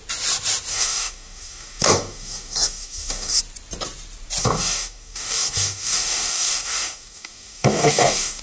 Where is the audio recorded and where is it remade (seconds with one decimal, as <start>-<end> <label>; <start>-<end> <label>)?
0.0-0.7 recorded; 0.7-3.4 remade; 3.4-4.4 recorded; 4.4-8.4 remade